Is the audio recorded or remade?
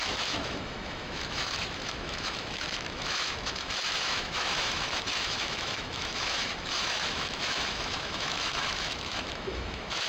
remade